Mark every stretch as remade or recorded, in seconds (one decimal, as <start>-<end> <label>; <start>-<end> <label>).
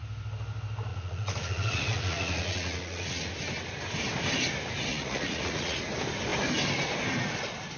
0.0-0.9 recorded; 0.9-3.3 remade; 3.3-4.9 recorded; 4.9-5.8 remade; 5.8-7.8 recorded